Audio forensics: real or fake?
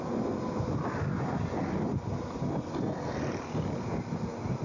real